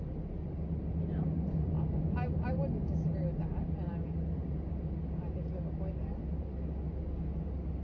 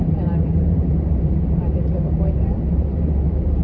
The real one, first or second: first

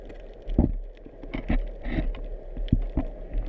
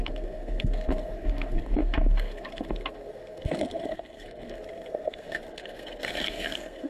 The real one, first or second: first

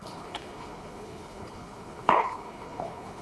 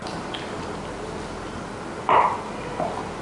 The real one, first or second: second